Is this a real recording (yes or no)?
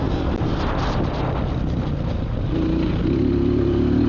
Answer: yes